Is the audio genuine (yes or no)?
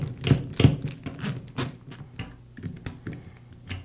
yes